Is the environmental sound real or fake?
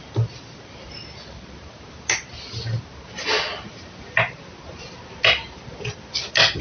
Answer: real